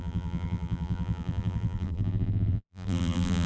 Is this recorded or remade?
remade